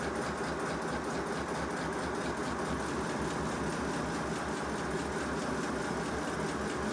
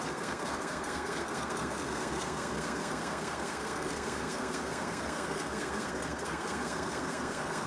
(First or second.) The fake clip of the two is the second